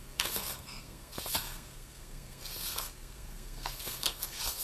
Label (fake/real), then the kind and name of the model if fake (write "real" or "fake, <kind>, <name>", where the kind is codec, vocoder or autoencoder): fake, codec, SNAC